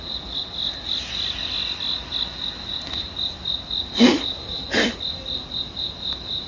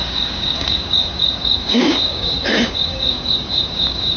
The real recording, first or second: first